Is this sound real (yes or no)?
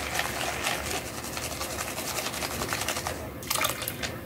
yes